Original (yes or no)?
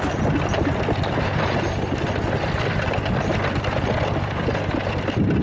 yes